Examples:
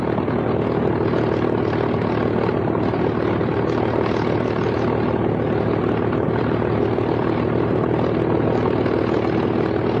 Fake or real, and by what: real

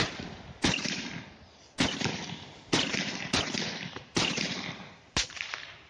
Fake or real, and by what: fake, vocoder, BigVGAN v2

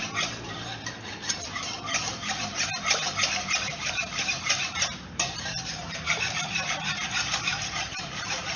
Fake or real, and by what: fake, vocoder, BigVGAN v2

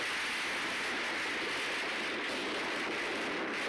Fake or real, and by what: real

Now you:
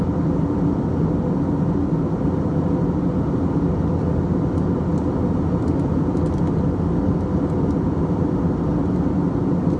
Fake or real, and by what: real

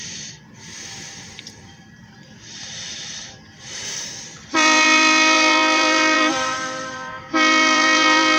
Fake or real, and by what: fake, vocoder, BigVGAN v2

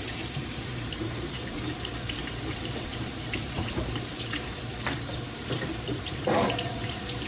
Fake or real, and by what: fake, vocoder, BigVGAN v2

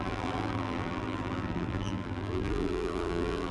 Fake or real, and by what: fake, vocoder, BigVGAN v2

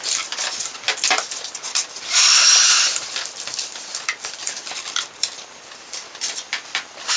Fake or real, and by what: fake, vocoder, BigVGAN v2